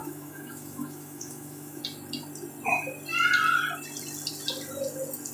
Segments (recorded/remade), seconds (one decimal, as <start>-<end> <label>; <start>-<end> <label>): 0.0-1.8 remade; 1.8-5.3 recorded